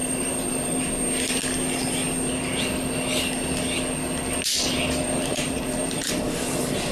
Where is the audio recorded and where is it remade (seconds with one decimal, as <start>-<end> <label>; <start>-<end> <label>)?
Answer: 0.0-0.8 remade; 0.8-5.0 recorded; 5.0-6.9 remade